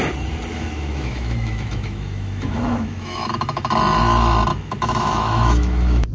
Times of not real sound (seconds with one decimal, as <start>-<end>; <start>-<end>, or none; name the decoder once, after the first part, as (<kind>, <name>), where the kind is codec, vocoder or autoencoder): 0.5-3.7 (autoencoder, DAC-VAE); 4.5-6.1